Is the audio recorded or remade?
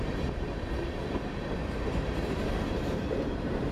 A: remade